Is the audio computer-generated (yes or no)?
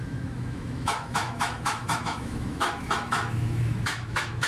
yes